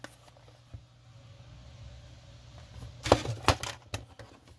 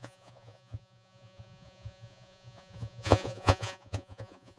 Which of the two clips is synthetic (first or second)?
second